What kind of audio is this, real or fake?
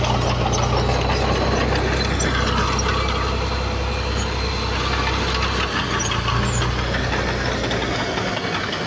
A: real